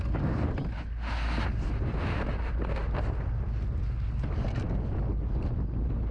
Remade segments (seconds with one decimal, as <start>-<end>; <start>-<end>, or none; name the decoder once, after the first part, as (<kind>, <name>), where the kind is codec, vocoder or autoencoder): none